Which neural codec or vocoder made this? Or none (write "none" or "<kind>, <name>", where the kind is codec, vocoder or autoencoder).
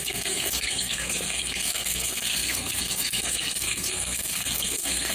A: codec, SNAC